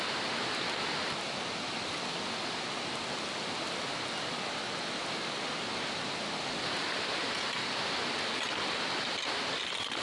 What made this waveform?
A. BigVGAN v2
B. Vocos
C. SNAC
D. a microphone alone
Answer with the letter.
D